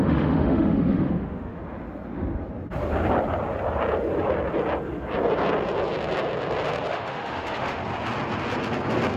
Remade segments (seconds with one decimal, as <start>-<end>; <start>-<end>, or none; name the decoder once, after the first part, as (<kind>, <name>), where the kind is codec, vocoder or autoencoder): 0.0-1.6 (autoencoder, DAC-VAE); 6.9-7.8

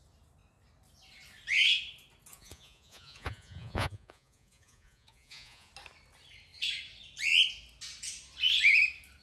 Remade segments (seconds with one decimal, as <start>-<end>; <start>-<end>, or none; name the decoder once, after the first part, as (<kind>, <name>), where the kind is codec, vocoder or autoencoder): 2.3-5.7 (vocoder, Vocos)

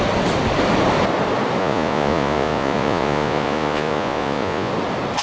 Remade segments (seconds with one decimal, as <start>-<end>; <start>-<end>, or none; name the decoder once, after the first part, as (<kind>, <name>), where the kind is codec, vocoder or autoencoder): 1.6-4.7 (vocoder, Vocos)